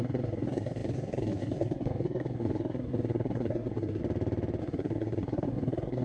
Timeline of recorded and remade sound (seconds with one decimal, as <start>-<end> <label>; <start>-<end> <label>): 0.0-4.0 remade; 4.0-4.6 recorded; 4.6-6.0 remade